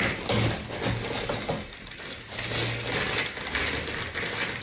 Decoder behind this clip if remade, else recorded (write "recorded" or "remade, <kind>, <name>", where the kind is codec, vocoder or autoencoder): recorded